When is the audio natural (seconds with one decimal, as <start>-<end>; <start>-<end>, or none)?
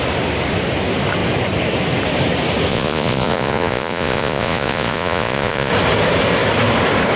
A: 0.0-2.7; 5.7-7.2